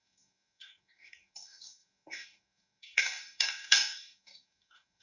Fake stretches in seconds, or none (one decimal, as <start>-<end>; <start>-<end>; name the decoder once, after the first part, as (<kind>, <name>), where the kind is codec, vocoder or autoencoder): 0.0-5.0 (codec, DAC)